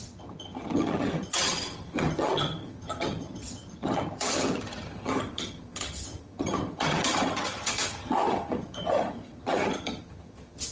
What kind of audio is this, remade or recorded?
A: remade